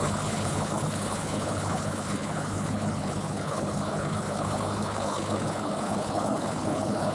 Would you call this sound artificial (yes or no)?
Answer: yes